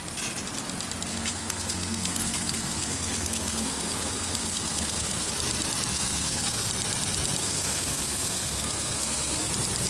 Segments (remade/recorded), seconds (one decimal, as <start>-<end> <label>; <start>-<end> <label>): 0.0-1.1 recorded; 1.1-5.3 remade; 5.3-5.9 recorded; 5.9-6.7 remade; 6.7-7.4 recorded; 7.4-9.5 remade; 9.5-9.9 recorded